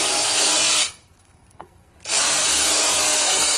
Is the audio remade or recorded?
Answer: remade